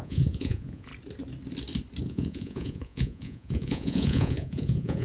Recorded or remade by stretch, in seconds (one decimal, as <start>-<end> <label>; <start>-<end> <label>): 0.0-0.9 remade; 0.9-2.0 recorded; 2.0-5.0 remade